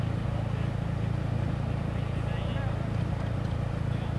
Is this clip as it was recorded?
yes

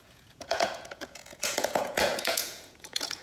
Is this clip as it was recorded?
no